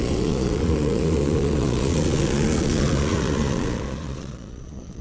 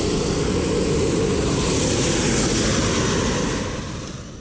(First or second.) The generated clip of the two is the first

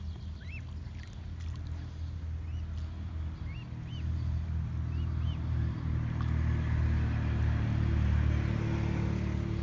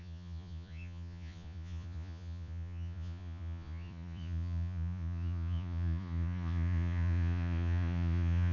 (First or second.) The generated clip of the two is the second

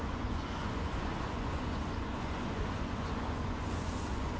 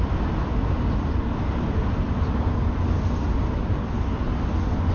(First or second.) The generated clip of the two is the first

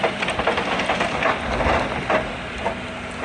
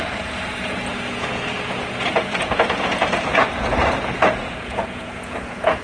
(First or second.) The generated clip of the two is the second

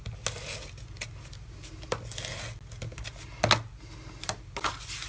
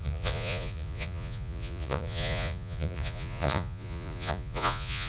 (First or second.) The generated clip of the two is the second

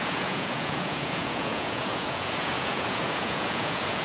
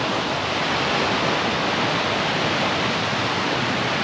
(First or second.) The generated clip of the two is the first